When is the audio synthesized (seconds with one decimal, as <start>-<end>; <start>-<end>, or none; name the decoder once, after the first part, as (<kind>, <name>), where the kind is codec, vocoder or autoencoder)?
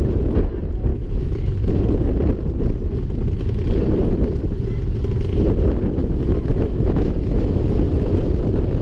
0.9-1.7 (autoencoder, DAC-VAE); 6.0-7.6